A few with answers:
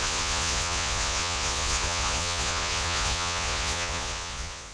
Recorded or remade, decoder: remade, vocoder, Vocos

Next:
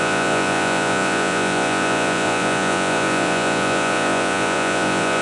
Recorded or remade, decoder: remade, vocoder, Vocos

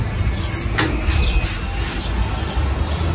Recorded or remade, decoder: recorded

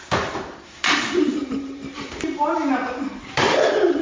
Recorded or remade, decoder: remade, vocoder, BigVGAN v2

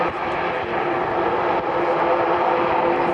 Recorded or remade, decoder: recorded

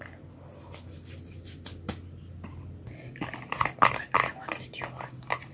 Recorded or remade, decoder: recorded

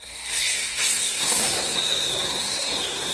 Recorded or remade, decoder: remade, codec, SNAC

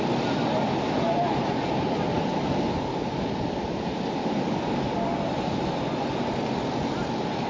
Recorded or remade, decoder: recorded